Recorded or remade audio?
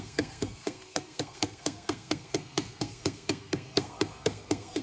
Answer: remade